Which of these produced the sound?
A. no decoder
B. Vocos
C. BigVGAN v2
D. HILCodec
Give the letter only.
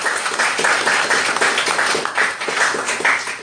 A